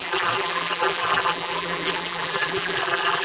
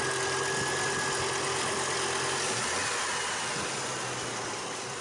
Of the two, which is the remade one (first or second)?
first